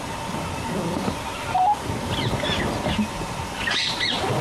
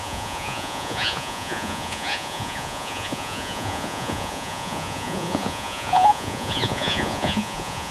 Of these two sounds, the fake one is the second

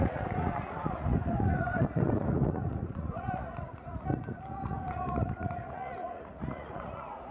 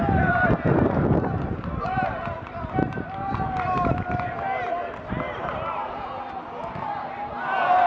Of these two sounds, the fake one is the first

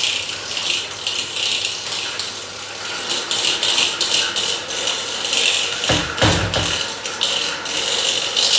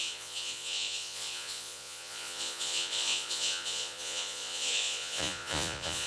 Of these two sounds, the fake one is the second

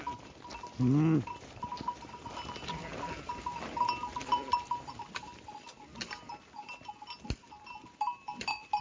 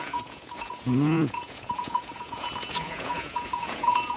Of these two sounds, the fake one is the second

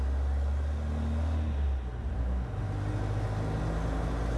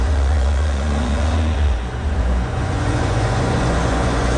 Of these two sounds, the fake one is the second